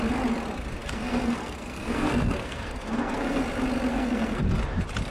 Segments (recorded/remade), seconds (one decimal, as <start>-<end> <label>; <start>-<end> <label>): 0.0-0.8 recorded; 0.8-3.4 remade; 3.4-3.9 recorded; 3.9-4.6 remade; 4.6-5.1 recorded

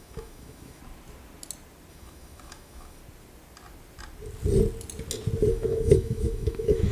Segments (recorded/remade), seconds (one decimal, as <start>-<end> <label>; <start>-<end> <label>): 0.0-0.8 remade; 0.8-1.9 recorded; 1.9-3.0 remade; 3.0-5.5 recorded; 5.5-6.9 remade